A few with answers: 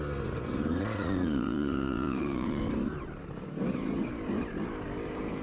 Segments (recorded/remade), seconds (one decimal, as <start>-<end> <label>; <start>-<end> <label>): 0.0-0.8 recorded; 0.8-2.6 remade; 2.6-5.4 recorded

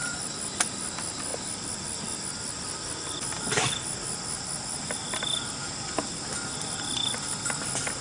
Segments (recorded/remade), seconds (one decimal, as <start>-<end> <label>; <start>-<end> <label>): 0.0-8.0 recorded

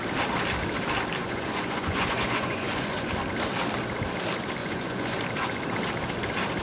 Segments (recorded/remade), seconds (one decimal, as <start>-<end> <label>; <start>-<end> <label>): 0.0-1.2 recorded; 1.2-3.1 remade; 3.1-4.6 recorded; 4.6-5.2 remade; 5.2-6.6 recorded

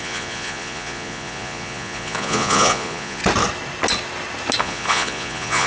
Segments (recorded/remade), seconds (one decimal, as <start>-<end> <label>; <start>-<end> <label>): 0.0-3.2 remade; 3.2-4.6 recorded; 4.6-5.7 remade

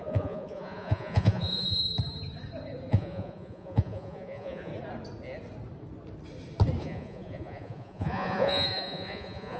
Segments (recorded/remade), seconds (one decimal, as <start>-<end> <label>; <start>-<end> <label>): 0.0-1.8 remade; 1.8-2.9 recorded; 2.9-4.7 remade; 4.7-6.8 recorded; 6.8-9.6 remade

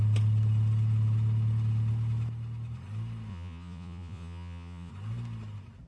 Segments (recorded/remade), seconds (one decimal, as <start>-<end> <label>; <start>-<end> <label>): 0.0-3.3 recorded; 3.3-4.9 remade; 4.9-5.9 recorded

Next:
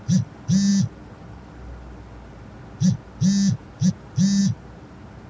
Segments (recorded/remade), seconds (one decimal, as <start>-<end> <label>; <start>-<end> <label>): 0.0-5.3 recorded

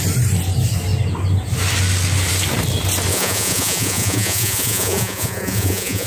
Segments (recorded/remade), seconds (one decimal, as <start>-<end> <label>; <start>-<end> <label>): 0.0-3.1 recorded; 3.1-6.1 remade